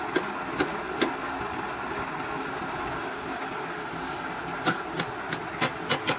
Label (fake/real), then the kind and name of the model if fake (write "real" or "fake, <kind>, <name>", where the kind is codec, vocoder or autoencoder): real